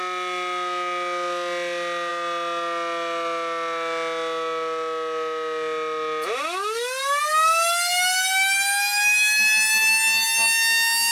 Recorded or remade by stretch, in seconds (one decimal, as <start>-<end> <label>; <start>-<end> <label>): 0.0-11.1 recorded